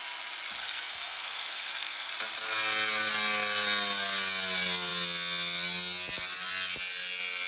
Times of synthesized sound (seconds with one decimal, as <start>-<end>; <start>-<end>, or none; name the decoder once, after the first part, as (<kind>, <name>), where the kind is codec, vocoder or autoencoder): 0.6-2.1 (codec, SNAC)